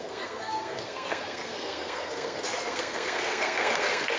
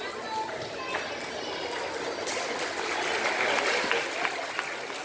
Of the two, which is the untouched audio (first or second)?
second